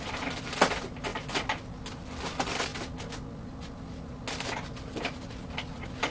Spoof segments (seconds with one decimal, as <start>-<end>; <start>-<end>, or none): none